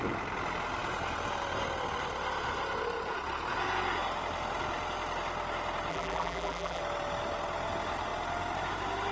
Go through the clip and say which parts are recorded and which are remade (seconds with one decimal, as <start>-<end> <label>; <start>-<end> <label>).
0.0-5.9 recorded; 5.9-6.8 remade; 6.8-9.1 recorded